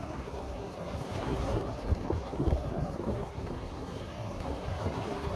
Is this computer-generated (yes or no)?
yes